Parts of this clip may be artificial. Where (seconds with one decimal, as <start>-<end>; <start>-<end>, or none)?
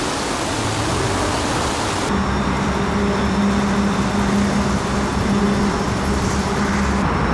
none